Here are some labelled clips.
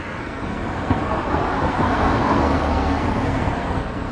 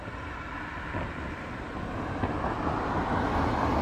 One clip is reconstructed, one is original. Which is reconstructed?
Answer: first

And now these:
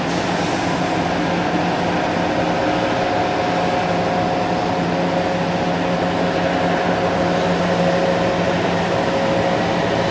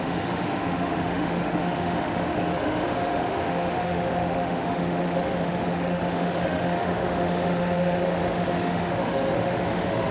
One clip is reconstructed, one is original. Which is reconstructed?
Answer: second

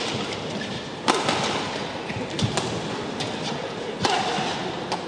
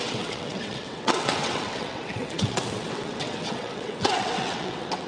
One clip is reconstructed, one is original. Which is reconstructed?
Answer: second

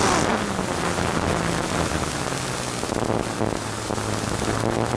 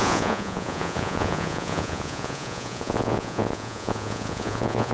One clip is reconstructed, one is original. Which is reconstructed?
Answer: second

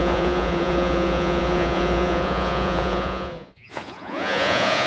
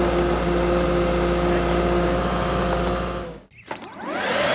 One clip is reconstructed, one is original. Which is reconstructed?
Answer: first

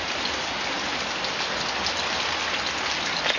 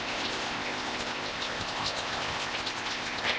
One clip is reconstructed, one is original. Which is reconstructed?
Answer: second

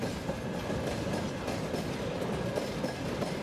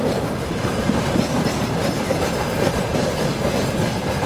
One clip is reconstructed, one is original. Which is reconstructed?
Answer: second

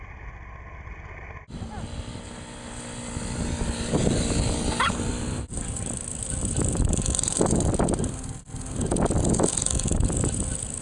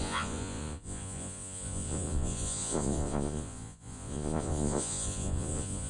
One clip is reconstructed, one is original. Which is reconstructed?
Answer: second